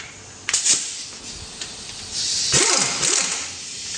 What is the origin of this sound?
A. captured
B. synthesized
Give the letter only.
A